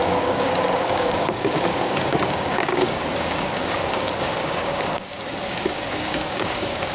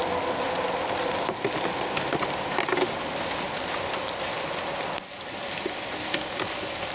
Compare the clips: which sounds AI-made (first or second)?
first